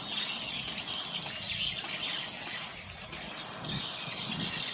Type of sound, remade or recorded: recorded